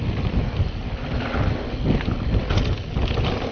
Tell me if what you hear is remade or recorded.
recorded